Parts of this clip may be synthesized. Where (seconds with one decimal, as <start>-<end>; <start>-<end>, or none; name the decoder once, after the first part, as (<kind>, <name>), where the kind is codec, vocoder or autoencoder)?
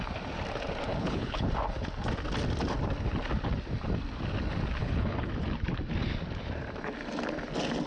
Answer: 0.9-1.5 (codec, HILCodec); 4.8-5.3